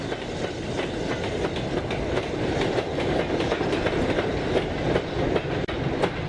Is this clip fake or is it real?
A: real